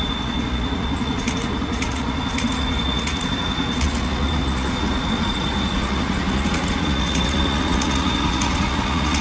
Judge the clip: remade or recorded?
remade